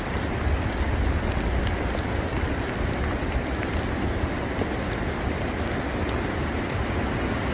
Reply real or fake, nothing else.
real